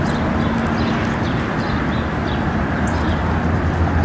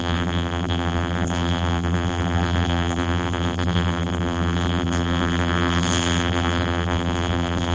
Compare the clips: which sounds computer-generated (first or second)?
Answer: second